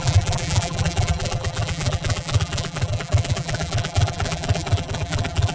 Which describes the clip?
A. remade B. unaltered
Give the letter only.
A